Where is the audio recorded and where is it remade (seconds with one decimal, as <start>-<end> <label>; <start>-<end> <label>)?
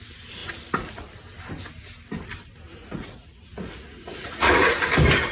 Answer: 0.0-2.8 recorded; 2.8-4.7 remade; 4.7-5.3 recorded